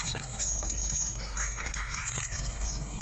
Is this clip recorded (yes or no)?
no